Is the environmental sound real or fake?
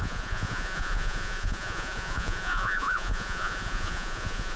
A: fake